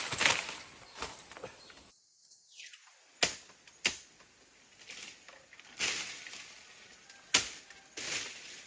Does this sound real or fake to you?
real